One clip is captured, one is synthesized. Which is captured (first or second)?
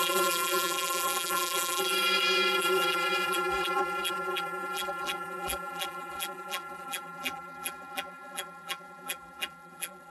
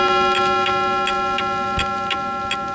second